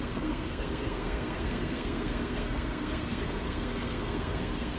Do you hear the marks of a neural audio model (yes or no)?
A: yes